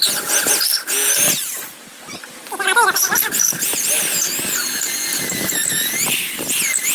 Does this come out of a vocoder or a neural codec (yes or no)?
no